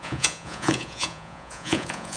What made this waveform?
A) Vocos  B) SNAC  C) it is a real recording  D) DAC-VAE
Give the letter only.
A